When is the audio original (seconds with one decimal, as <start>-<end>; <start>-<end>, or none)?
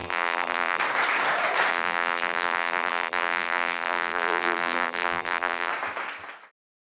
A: 0.8-1.7; 5.7-6.8